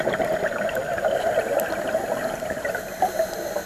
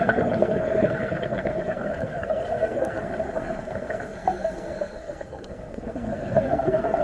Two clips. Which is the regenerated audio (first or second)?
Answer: second